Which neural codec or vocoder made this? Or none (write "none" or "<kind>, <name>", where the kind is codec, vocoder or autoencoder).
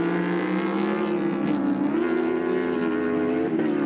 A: none